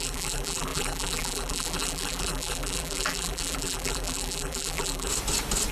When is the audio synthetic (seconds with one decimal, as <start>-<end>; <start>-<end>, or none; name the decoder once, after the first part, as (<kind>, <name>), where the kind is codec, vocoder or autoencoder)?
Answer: 0.0-5.1 (vocoder, BigVGAN v2)